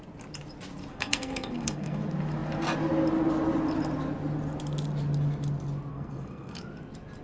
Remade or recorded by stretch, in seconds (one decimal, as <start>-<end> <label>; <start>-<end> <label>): 0.0-0.9 recorded; 0.9-2.0 remade; 2.0-5.9 recorded; 5.9-6.6 remade; 6.6-7.2 recorded